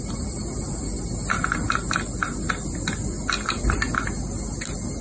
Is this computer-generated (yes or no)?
no